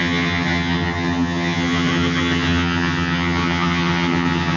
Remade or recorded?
remade